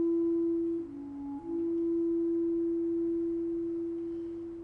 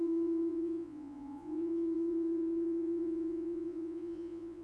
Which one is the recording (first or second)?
first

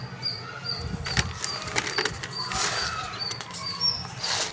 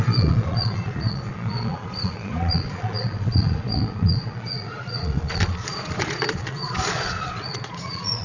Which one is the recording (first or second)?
first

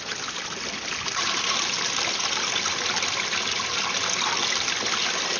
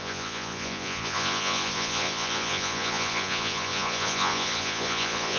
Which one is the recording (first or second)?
first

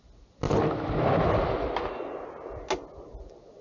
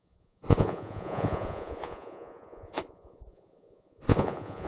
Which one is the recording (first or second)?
first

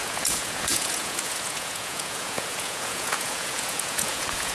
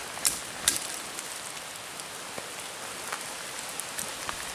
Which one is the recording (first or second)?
second